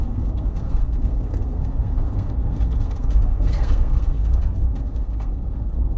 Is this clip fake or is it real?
fake